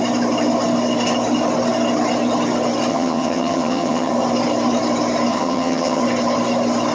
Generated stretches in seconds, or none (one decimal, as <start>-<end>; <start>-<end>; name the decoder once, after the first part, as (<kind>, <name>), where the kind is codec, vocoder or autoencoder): 2.9-4.1 (vocoder, HiFi-GAN); 5.3-6.0